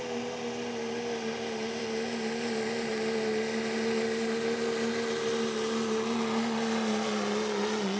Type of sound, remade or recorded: recorded